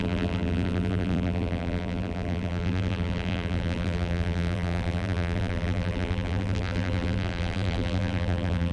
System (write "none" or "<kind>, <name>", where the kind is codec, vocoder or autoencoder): vocoder, BigVGAN v2